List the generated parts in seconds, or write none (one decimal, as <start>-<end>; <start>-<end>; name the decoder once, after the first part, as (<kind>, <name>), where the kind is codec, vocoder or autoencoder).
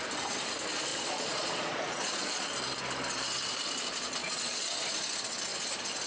0.9-2.5 (vocoder, Vocos); 4.2-4.9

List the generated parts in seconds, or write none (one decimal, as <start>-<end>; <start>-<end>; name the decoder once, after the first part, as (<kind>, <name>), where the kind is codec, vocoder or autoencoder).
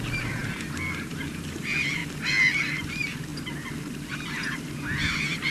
0.0-2.0 (vocoder, BigVGAN v2); 2.9-3.3; 4.3-5.5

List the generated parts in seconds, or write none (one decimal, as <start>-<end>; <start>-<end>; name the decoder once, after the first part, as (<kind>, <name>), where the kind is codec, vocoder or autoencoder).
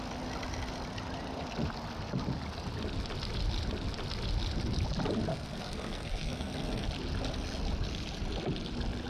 5.3-6.9 (codec, SNAC)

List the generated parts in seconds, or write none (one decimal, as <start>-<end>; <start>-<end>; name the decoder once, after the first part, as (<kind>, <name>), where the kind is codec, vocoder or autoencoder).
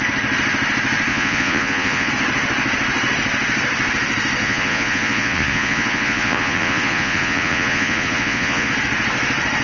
1.1-2.1 (vocoder, Vocos); 4.4-8.7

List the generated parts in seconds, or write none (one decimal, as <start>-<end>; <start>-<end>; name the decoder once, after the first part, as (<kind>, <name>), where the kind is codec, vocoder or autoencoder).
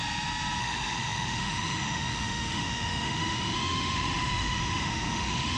0.6-5.6 (autoencoder, DAC-VAE)